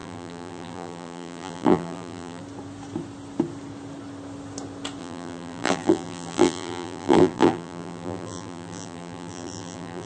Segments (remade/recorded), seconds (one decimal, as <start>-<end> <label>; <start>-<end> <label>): 0.0-2.4 remade; 2.4-5.0 recorded; 5.0-10.1 remade